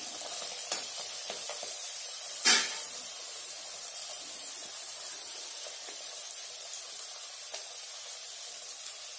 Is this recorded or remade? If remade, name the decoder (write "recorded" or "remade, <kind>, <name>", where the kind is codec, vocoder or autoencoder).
recorded